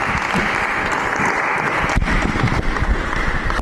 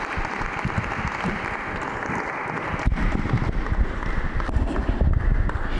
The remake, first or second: second